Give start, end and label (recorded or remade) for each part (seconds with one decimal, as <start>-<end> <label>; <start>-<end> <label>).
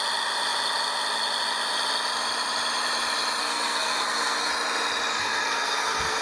0.0-3.4 recorded; 3.4-4.5 remade; 4.5-5.1 recorded; 5.1-6.2 remade